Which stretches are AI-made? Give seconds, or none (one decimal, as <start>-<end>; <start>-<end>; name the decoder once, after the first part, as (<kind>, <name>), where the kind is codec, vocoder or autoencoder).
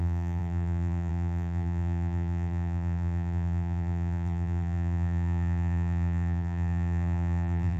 0.0-7.8 (vocoder, BigVGAN v2)